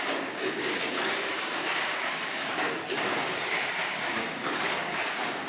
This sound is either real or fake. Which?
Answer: fake